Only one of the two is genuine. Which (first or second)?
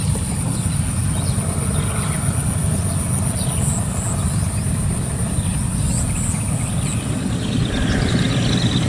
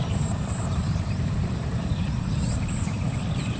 first